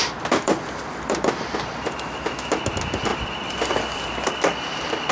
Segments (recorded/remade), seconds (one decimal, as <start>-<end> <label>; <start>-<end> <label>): 0.0-2.3 remade; 2.3-3.1 recorded; 3.1-3.7 remade; 3.7-5.1 recorded